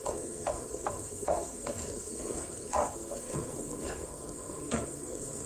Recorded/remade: remade